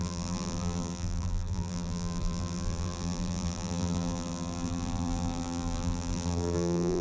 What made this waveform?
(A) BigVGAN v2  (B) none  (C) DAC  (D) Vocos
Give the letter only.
A